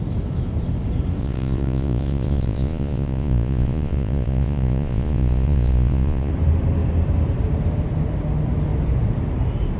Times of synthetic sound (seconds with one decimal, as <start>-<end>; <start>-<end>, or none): 1.2-6.3